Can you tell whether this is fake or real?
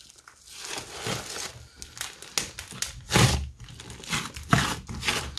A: real